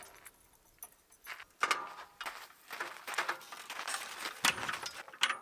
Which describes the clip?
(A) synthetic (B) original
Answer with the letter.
B